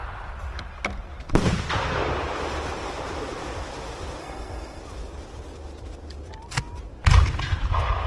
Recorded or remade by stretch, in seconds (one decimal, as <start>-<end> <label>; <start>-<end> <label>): 0.0-4.2 recorded; 4.2-4.8 remade; 4.8-8.1 recorded